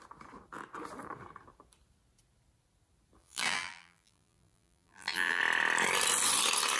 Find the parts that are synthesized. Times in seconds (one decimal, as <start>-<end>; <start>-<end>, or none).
3.2-5.4